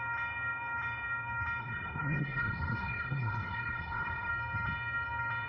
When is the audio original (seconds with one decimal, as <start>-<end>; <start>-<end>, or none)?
0.0-1.6; 4.3-5.5